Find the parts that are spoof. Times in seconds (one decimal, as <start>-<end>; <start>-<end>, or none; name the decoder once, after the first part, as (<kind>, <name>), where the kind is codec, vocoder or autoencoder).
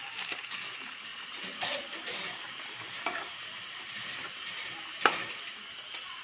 1.1-4.8 (vocoder, BigVGAN v2)